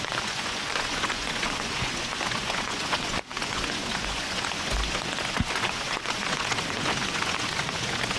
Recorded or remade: remade